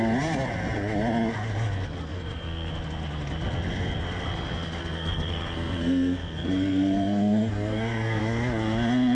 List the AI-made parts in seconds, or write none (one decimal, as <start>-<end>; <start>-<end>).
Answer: 2.1-2.7; 4.8-8.2